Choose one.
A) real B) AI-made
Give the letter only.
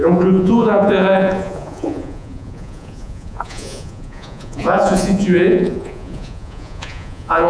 B